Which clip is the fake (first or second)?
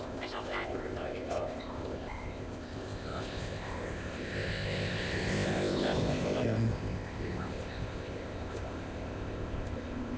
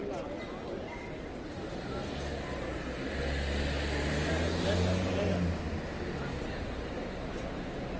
first